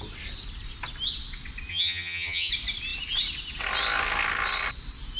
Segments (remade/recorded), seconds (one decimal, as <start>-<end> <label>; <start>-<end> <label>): 0.0-1.7 recorded; 1.7-2.5 remade; 2.5-5.2 recorded